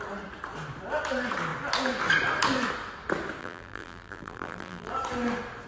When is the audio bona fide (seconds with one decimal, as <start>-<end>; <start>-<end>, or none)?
0.0-3.4; 4.9-5.7